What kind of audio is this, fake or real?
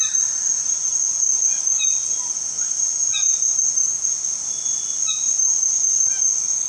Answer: real